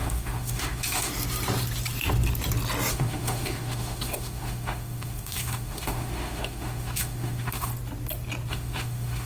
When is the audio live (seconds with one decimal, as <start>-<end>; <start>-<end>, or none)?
1.1-2.9; 7.7-8.5